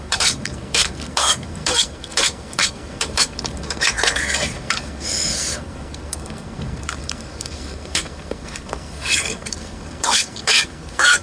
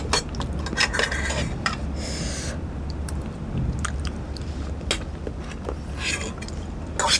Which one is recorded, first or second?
second